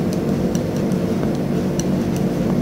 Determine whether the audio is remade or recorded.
recorded